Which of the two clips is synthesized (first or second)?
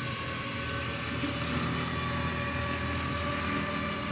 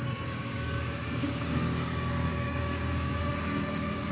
second